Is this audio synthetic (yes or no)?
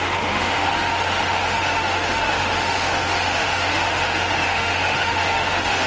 yes